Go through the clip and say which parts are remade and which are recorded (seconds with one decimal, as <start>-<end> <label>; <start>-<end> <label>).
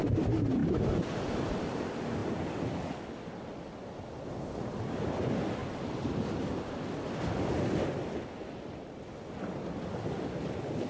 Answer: 0.0-0.6 recorded; 0.6-1.3 remade; 1.3-10.9 recorded